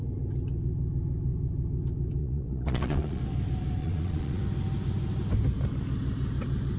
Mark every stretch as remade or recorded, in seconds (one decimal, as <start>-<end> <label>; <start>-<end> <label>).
0.0-2.2 recorded; 2.2-3.2 remade; 3.2-3.8 recorded; 3.8-4.4 remade; 4.4-6.8 recorded